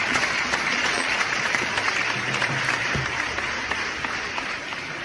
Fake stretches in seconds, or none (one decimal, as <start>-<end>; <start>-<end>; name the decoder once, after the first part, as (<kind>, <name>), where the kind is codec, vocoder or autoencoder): 0.0-1.7 (vocoder, Vocos)